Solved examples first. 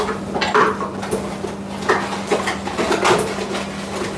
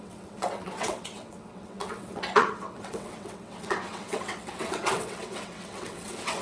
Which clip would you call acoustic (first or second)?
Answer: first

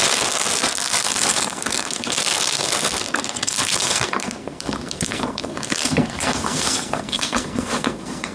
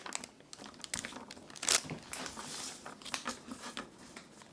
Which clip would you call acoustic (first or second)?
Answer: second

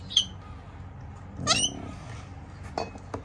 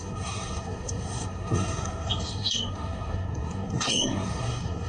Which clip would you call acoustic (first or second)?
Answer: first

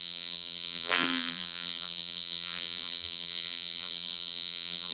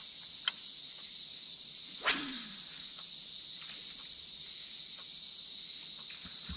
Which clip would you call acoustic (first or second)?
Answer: second